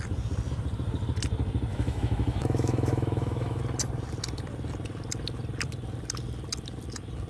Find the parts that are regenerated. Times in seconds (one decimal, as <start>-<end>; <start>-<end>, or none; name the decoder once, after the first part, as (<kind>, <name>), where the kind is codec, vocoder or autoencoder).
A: 1.7-3.6 (autoencoder, DAC-VAE)